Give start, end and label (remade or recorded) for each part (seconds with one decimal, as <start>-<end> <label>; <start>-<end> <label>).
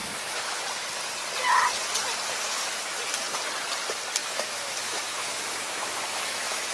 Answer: 0.0-0.6 remade; 0.6-2.4 recorded; 2.4-3.0 remade; 3.0-4.2 recorded; 4.2-6.7 remade